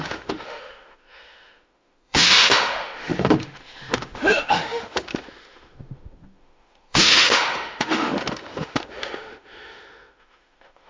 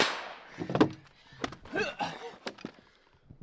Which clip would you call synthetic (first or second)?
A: first